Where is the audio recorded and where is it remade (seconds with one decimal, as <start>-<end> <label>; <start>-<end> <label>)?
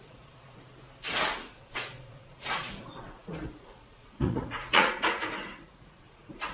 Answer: 0.0-0.7 remade; 0.7-1.4 recorded; 1.4-6.5 remade